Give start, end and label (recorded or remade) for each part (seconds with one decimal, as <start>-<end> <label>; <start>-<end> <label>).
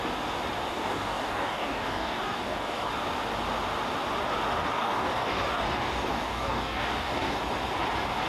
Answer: 0.0-0.7 recorded; 0.7-2.9 remade; 2.9-4.7 recorded; 4.7-7.4 remade; 7.4-8.3 recorded